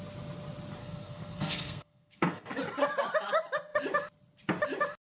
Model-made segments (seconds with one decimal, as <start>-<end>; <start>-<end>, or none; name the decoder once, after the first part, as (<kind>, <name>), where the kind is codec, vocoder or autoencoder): 0.8-2.5 (codec, SNAC)